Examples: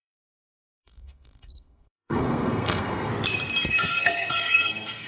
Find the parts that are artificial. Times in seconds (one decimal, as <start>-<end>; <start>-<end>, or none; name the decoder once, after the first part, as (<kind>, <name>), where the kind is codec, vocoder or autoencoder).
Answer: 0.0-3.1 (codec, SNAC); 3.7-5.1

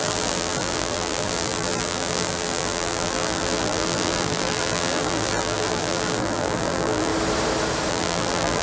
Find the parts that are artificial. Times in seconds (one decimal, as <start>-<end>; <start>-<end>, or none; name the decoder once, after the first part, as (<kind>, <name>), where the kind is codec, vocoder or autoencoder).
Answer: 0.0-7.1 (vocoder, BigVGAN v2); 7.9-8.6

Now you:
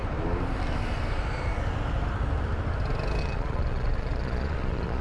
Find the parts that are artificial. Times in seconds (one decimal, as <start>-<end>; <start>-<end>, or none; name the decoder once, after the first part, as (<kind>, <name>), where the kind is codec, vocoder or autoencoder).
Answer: 3.2-5.0 (vocoder, Vocos)

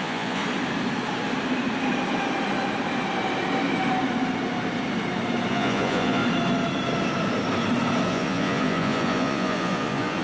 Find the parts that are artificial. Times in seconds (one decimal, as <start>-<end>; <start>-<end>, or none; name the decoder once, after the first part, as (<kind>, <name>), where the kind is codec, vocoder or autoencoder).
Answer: 0.0-0.4 (vocoder, Vocos); 5.5-6.2; 8.1-10.2